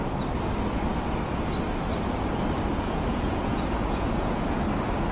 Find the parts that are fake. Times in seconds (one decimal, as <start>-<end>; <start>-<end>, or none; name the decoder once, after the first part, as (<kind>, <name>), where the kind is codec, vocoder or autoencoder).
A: 2.7-4.6 (vocoder, Vocos)